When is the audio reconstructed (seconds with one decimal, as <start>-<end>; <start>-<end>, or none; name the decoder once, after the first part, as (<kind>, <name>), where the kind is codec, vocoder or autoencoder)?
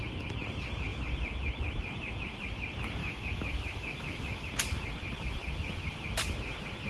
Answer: 3.0-4.5 (autoencoder, DAC-VAE)